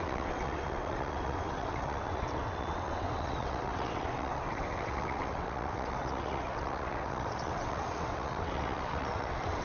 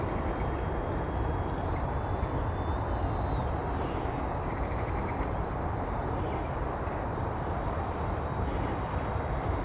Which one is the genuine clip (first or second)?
second